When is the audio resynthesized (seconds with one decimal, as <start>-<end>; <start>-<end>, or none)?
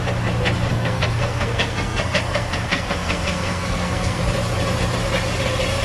0.7-4.2